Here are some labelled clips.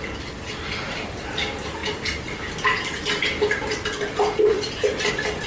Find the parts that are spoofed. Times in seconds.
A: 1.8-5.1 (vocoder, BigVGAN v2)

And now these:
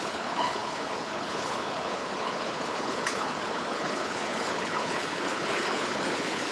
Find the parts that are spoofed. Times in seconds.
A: 0.0-6.5 (codec, HILCodec)

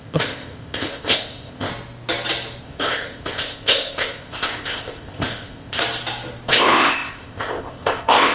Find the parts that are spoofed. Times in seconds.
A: 0.0-1.7 (codec, ZipCodec); 2.6-5.8; 6.5-8.3

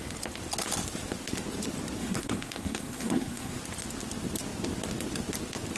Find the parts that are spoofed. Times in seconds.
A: 2.0-3.6 (codec, SNAC)

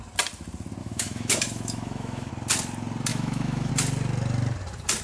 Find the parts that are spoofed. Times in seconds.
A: 0.8-2.3 (autoencoder, DAC-VAE); 3.1-3.7

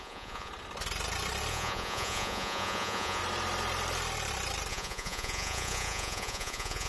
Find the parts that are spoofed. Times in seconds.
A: 0.0-0.5 (vocoder, Vocos); 1.5-3.2; 4.7-6.9